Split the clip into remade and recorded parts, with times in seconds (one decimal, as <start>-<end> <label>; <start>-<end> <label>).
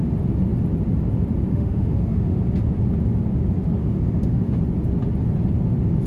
0.0-1.5 recorded; 1.5-2.4 remade; 2.4-3.8 recorded; 3.8-4.6 remade; 4.6-6.1 recorded